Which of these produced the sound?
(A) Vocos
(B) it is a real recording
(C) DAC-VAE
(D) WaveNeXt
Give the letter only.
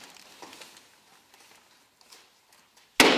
B